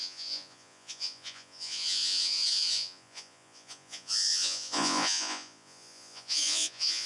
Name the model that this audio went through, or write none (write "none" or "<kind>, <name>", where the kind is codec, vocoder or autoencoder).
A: vocoder, Vocos